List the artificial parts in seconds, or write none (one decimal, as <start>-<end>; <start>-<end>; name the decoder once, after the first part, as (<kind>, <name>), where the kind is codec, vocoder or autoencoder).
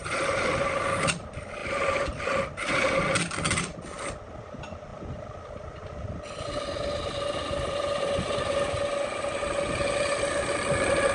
0.0-0.7 (vocoder, BigVGAN v2); 1.6-2.2; 4.9-8.8